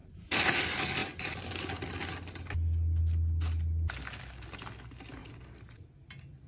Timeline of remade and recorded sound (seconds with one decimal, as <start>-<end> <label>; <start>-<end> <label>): 0.0-6.5 recorded